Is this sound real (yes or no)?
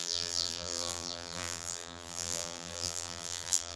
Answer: no